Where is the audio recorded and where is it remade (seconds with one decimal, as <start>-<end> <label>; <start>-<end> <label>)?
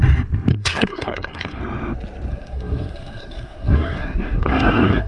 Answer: 0.0-0.5 recorded; 0.5-1.6 remade; 1.6-2.3 recorded; 2.3-5.1 remade